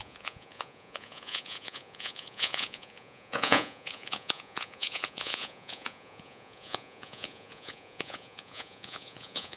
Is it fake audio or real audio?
fake